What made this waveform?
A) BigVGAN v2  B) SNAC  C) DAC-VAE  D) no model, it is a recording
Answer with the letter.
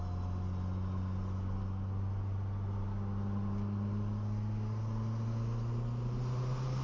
D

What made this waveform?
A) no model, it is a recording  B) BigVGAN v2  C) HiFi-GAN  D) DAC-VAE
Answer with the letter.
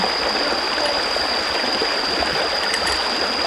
A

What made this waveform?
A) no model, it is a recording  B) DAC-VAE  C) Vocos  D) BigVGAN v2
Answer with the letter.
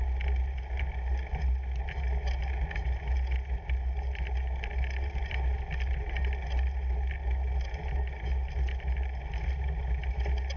A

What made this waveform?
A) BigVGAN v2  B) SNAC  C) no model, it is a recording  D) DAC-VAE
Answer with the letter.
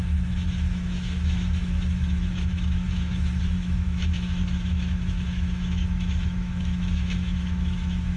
D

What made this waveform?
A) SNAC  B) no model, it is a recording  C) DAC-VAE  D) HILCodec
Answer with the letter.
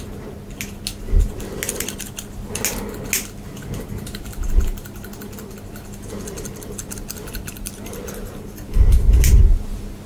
B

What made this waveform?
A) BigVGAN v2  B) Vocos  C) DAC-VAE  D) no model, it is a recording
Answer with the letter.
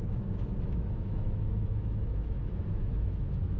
C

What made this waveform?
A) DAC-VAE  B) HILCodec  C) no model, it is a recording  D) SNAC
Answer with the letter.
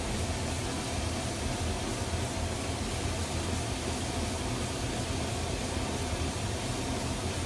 C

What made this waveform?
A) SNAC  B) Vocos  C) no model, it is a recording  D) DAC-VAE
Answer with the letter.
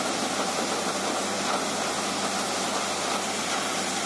C